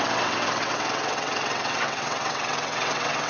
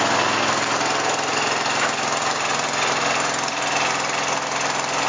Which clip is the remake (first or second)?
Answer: first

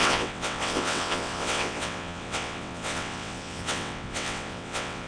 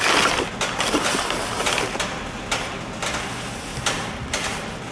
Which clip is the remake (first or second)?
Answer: first